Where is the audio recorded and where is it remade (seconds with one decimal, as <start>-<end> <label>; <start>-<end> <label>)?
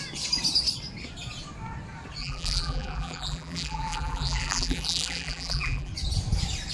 0.0-2.2 recorded; 2.2-5.9 remade; 5.9-6.7 recorded